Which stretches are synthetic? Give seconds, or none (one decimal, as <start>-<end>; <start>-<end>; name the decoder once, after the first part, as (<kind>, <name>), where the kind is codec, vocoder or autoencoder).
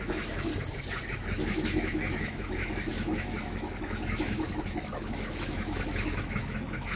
0.0-0.5 (autoencoder, DAC-VAE); 1.1-7.0